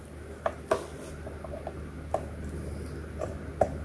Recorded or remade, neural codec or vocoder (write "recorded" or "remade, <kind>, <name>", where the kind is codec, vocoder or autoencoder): recorded